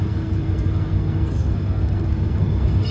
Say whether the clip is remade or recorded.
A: remade